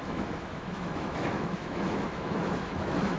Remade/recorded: remade